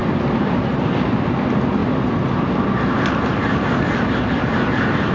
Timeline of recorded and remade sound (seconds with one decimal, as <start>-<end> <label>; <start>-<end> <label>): 0.0-5.1 recorded